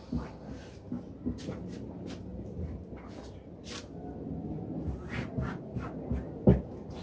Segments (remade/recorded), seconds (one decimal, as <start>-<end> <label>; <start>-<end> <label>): 0.0-7.0 recorded